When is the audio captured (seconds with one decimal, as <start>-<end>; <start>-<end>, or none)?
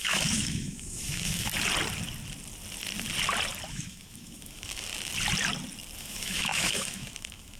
1.5-3.7; 4.9-6.0